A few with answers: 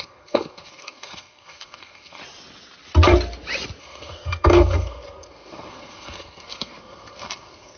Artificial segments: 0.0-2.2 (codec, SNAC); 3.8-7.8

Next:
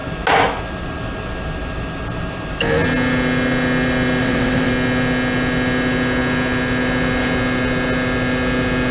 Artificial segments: 4.2-4.7 (vocoder, WaveNeXt)

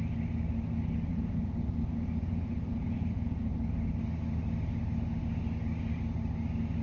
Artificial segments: 1.1-3.5 (vocoder, Vocos)

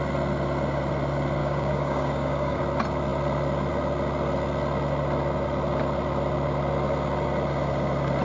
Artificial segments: 1.4-2.6 (codec, DAC)